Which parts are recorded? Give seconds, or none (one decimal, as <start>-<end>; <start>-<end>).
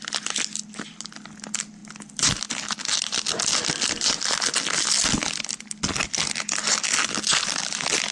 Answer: 0.0-8.1